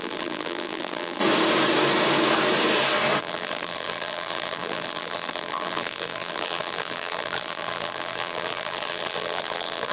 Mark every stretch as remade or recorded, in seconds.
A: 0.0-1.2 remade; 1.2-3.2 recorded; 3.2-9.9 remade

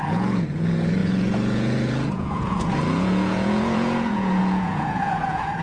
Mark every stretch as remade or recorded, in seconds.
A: 0.0-5.6 remade

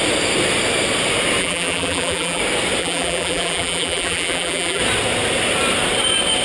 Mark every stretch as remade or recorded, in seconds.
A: 0.0-1.4 recorded; 1.4-2.4 remade; 2.4-2.8 recorded; 2.8-4.8 remade; 4.8-6.4 recorded